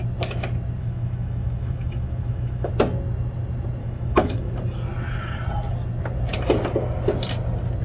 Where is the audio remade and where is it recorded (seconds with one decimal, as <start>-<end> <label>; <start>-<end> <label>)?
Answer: 0.0-0.8 recorded; 0.8-2.7 remade; 2.7-3.8 recorded; 3.8-4.5 remade; 4.5-7.8 recorded